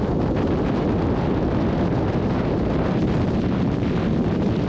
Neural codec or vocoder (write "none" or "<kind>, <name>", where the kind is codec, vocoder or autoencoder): none